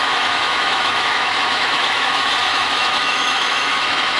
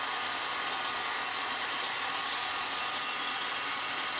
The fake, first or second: first